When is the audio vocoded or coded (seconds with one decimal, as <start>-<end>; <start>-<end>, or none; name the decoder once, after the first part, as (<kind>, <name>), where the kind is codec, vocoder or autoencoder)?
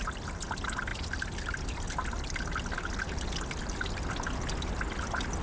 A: none